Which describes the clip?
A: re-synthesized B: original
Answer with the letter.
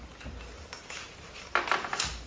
B